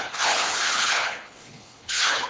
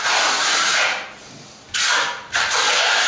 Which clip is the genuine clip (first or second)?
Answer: second